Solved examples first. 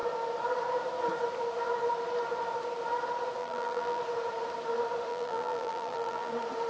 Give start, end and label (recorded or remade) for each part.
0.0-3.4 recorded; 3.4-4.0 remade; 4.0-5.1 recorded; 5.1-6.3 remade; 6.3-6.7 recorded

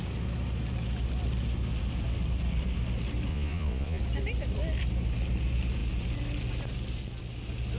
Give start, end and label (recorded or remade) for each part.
0.0-3.3 recorded; 3.3-4.0 remade; 4.0-7.8 recorded

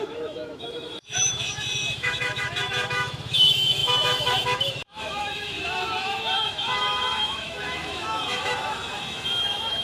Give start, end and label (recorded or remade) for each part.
0.0-9.8 remade

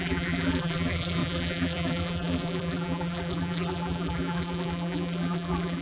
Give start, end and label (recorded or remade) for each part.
0.0-5.8 remade

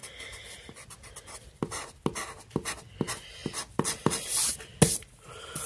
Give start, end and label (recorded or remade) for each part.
0.0-5.7 recorded